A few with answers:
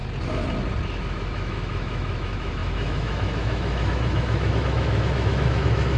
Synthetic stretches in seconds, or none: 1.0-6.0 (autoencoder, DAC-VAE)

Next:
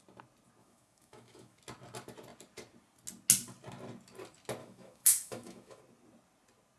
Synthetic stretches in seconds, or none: 0.6-1.6 (autoencoder, DAC-VAE); 4.6-5.8

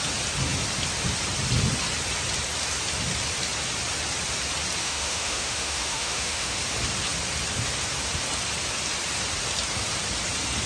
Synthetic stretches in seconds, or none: 4.8-6.6 (autoencoder, DAC-VAE)

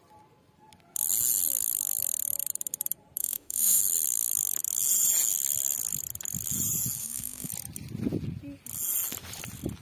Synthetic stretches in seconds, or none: 3.2-3.8 (autoencoder, DAC-VAE); 7.0-7.5

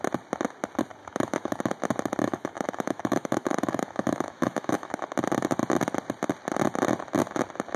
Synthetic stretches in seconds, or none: 1.0-1.6 (autoencoder, DAC-VAE); 2.2-5.0

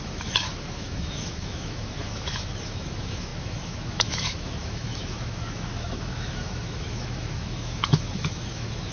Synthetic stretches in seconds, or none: 0.0-8.9 (autoencoder, DAC-VAE)